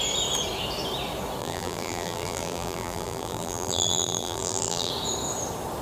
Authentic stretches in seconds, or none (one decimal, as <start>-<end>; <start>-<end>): 0.0-1.4; 4.9-5.8